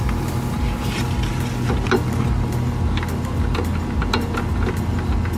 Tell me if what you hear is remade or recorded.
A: recorded